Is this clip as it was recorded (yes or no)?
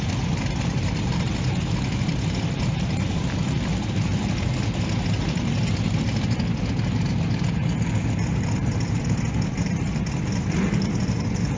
yes